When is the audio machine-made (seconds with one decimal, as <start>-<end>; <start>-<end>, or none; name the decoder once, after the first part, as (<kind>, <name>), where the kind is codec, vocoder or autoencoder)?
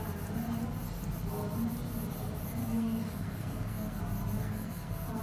2.6-4.0 (codec, SNAC); 4.4-5.2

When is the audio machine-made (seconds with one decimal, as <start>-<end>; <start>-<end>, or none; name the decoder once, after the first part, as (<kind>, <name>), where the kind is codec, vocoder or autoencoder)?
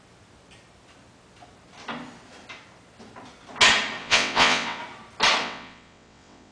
4.0-4.8 (vocoder, WaveNeXt); 5.4-6.5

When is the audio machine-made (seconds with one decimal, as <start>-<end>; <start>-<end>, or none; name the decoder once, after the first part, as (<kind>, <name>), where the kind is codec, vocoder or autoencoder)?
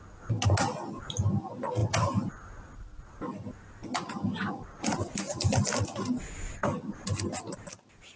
none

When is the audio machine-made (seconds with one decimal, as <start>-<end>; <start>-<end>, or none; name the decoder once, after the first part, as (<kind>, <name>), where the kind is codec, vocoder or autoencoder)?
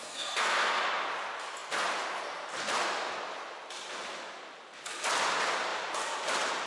0.0-0.8 (codec, SNAC)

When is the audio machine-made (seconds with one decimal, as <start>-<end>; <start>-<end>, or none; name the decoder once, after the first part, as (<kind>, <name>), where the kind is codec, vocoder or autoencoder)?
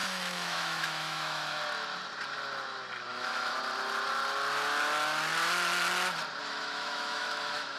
0.0-1.6 (autoencoder, DAC-VAE); 3.1-3.6; 6.4-7.8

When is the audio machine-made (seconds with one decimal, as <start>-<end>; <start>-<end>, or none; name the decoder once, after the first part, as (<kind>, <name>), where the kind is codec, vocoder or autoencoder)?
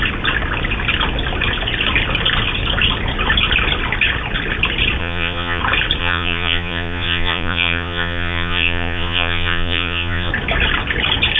5.0-5.6 (vocoder, Vocos); 6.0-10.3